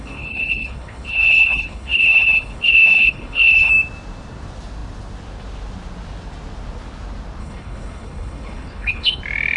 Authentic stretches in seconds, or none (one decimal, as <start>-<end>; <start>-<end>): 3.7-7.4; 9.2-9.6